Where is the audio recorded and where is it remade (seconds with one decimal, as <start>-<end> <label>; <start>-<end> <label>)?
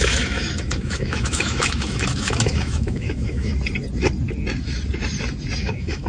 0.0-3.5 remade; 3.5-5.6 recorded; 5.6-6.1 remade